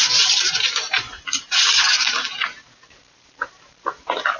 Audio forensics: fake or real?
fake